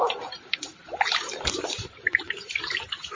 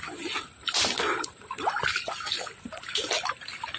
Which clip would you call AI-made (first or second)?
first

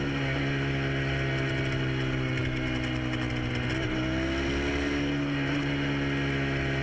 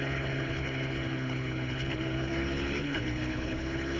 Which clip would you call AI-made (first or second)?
second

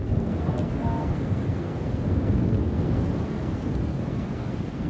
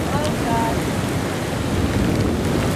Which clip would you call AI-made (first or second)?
first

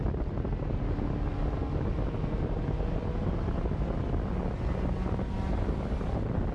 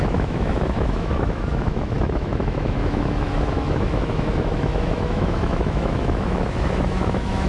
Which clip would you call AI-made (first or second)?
second